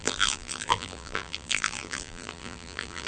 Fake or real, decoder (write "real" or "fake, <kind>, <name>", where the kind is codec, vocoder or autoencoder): fake, vocoder, BigVGAN v2